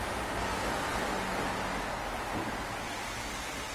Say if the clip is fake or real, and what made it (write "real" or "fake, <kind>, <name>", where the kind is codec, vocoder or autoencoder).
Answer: real